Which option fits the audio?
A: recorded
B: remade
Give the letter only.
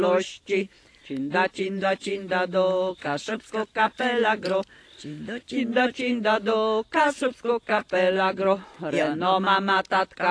A